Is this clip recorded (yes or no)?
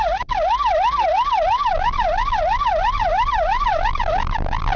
yes